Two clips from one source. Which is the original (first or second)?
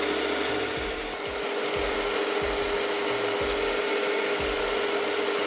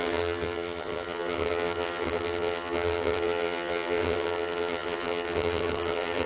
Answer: first